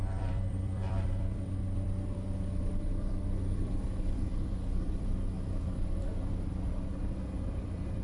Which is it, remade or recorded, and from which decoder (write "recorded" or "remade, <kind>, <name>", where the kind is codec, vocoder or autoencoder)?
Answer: remade, vocoder, BigVGAN v2